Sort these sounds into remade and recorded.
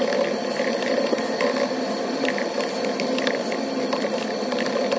recorded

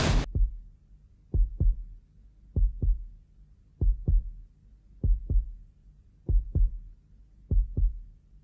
recorded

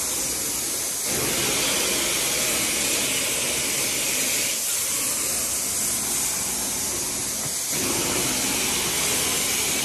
recorded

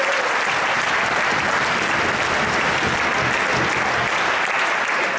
recorded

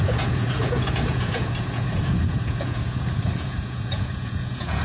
remade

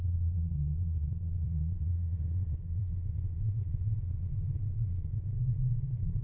remade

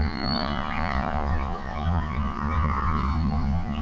remade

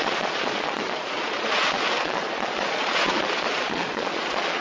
remade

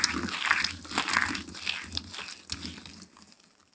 recorded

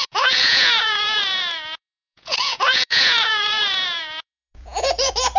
remade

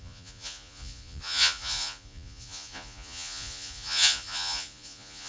remade